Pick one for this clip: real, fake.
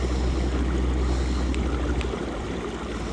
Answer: real